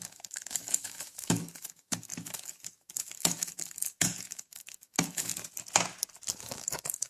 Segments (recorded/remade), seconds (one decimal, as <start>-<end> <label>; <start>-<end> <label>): 0.0-5.3 remade; 5.3-6.3 recorded; 6.3-7.1 remade